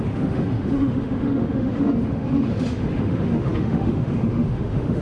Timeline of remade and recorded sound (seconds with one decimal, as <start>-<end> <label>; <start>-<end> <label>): 0.0-5.0 remade